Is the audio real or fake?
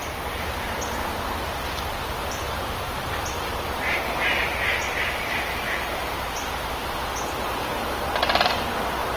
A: fake